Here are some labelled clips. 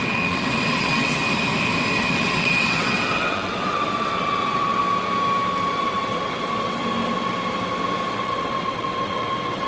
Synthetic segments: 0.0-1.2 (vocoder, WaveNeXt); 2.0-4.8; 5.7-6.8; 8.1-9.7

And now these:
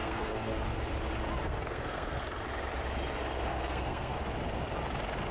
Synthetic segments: 0.0-0.5 (codec, SNAC); 1.4-2.2; 3.5-4.2